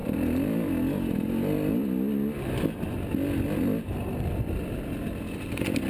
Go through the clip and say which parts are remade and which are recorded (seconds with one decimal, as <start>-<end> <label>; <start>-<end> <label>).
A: 0.0-5.9 recorded

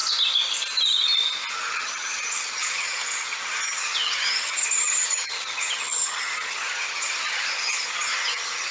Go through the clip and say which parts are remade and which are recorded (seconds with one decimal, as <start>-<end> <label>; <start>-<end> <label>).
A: 0.0-1.5 recorded; 1.5-8.7 remade

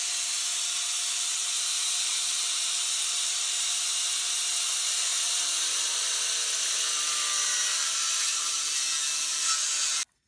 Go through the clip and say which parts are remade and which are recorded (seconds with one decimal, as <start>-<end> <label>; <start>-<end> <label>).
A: 0.0-5.1 recorded; 5.1-8.5 remade; 8.5-10.3 recorded

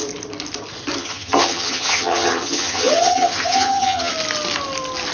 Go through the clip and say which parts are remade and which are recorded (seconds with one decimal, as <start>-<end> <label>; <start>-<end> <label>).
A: 0.0-1.0 recorded; 1.0-4.1 remade; 4.1-5.1 recorded

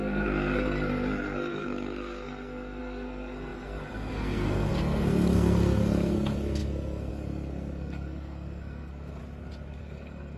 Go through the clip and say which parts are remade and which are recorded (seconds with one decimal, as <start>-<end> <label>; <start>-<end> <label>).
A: 0.0-9.2 remade; 9.2-9.8 recorded; 9.8-10.4 remade

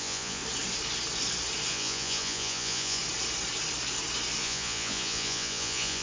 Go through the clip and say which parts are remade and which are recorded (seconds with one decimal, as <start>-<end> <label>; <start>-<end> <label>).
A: 0.0-0.4 remade; 0.4-1.7 recorded; 1.7-3.0 remade; 3.0-4.4 recorded; 4.4-6.0 remade